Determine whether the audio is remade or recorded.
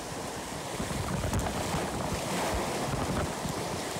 recorded